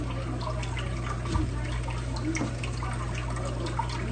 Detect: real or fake real